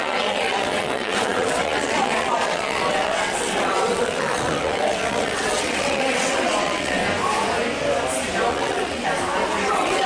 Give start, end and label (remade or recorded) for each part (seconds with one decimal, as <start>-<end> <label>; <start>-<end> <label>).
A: 0.0-7.0 remade; 7.0-8.5 recorded; 8.5-9.0 remade; 9.0-9.7 recorded; 9.7-10.1 remade